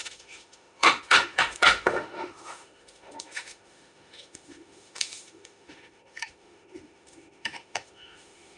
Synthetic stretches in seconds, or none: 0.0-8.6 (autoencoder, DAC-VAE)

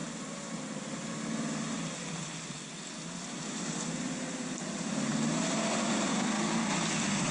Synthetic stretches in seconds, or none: none

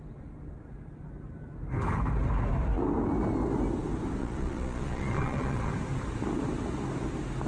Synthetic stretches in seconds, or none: 4.2-5.7 (vocoder, Vocos)